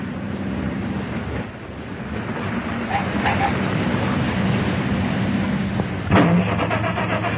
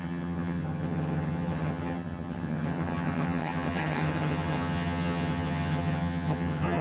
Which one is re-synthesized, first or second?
second